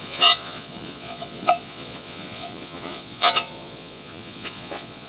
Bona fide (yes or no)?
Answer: no